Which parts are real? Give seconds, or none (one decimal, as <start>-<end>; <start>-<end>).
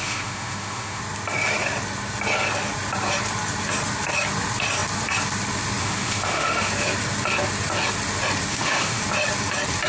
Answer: 1.0-5.8; 6.7-8.5; 9.0-9.9